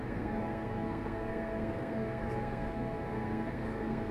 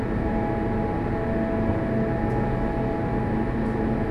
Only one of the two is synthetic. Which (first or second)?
first